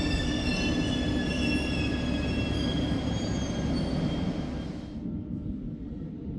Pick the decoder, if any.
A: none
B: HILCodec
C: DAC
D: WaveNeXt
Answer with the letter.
A